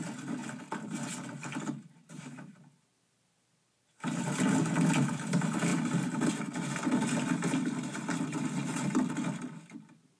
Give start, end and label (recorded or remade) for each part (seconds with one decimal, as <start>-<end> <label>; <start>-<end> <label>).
0.0-0.4 recorded; 0.4-3.8 remade; 3.8-5.7 recorded; 5.7-6.3 remade; 6.3-10.2 recorded